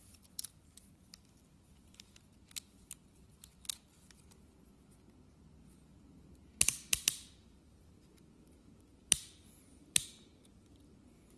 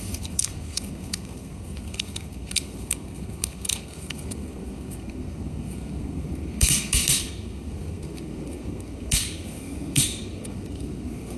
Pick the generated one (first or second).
second